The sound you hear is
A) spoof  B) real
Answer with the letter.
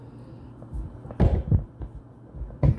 B